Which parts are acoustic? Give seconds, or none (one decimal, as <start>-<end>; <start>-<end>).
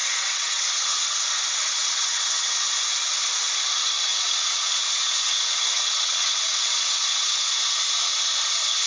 1.2-1.8; 2.6-4.1; 7.5-8.9